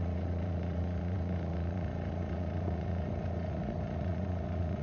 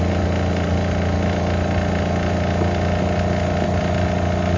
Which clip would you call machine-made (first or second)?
first